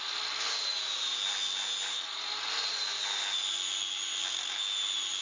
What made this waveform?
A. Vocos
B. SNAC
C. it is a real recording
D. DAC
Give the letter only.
C